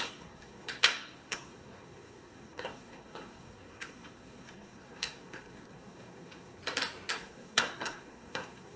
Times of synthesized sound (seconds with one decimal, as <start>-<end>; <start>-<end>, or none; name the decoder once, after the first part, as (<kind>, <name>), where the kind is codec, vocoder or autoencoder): 0.0-6.6 (codec, SNAC); 7.1-8.8